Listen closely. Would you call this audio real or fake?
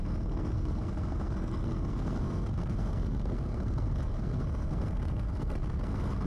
fake